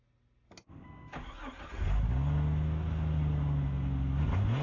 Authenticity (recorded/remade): recorded